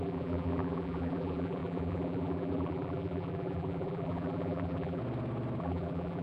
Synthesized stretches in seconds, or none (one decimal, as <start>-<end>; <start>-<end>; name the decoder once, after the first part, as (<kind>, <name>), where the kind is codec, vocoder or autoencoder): 0.0-5.0 (vocoder, BigVGAN v2); 5.6-6.2